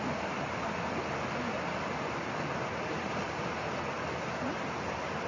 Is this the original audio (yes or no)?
yes